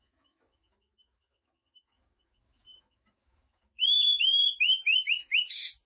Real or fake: fake